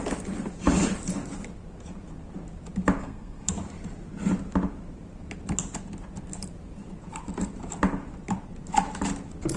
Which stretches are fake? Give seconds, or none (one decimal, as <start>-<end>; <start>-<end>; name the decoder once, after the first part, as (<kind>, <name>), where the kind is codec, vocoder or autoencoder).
3.0-3.5 (codec, SNAC)